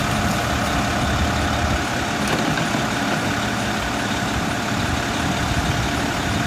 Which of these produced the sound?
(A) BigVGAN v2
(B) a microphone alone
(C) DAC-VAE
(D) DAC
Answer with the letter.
B